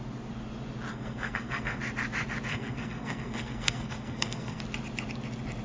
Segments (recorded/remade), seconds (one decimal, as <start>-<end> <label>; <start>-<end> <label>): 0.0-0.9 recorded; 0.9-1.8 remade; 1.8-2.5 recorded; 2.5-4.6 remade; 4.6-5.6 recorded